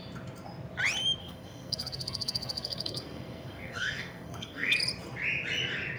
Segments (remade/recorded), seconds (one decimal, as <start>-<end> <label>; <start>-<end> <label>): 0.0-1.2 recorded; 1.2-4.8 remade; 4.8-6.0 recorded